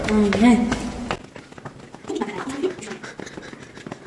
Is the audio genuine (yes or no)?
yes